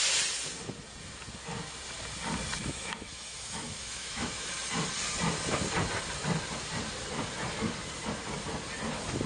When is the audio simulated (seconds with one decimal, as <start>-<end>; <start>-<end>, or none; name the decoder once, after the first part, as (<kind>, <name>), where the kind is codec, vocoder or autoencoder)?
2.6-4.5 (autoencoder, DAC-VAE)